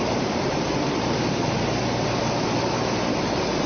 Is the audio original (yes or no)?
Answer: no